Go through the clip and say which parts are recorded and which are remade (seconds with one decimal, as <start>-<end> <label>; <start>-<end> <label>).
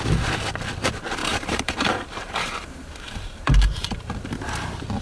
0.0-1.2 recorded; 1.2-4.2 remade; 4.2-5.0 recorded